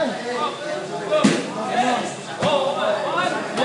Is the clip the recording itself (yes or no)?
yes